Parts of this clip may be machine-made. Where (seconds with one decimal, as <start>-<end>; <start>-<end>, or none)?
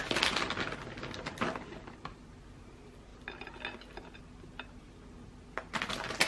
none